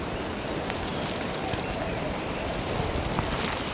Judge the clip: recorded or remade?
recorded